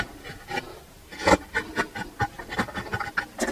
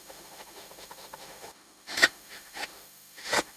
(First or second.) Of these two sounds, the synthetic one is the second